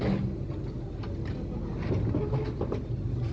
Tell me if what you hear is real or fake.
real